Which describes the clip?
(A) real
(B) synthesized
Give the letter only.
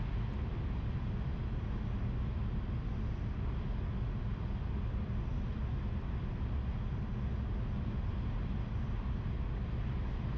A